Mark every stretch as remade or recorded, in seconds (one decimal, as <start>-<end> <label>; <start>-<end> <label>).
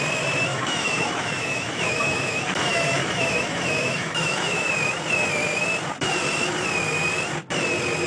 0.0-0.5 recorded; 0.5-4.7 remade; 4.7-8.1 recorded